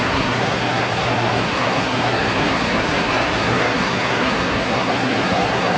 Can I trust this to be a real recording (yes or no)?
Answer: no